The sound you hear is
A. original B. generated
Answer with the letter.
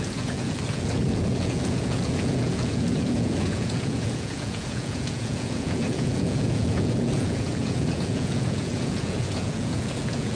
B